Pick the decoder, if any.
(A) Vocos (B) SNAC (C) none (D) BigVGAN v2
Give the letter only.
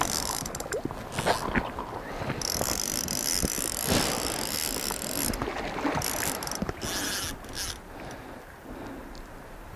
C